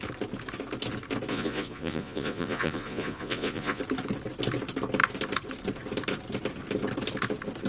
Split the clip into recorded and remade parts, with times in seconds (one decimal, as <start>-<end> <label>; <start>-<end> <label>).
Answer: 0.0-1.3 recorded; 1.3-3.8 remade; 3.8-7.7 recorded